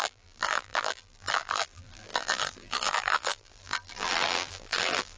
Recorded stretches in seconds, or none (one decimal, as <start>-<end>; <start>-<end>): none